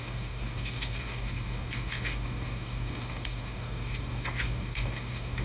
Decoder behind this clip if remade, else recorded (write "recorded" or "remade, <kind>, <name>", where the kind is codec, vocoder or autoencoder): remade, codec, DAC